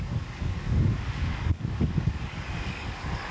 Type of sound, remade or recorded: remade